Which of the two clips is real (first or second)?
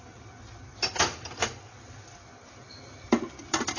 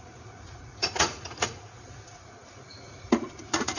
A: first